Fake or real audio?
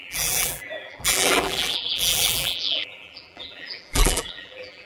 fake